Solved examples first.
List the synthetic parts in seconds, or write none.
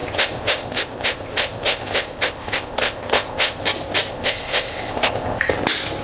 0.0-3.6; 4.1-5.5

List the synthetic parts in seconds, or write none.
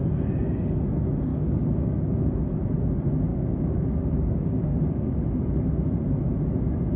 1.3-2.7; 3.3-5.1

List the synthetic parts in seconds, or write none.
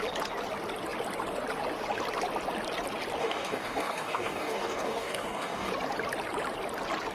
3.2-5.7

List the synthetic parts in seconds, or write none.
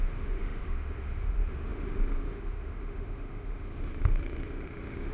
0.0-5.1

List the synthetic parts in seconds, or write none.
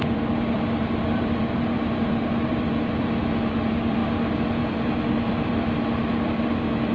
0.0-6.9